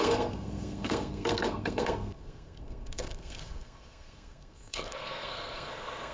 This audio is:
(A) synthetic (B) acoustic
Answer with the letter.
A